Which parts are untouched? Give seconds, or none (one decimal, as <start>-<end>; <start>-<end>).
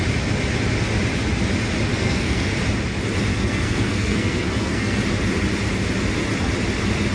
0.0-1.9; 2.5-3.3; 5.0-7.1